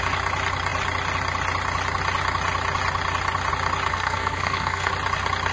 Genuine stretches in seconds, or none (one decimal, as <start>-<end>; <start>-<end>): 0.0-3.9; 4.9-5.5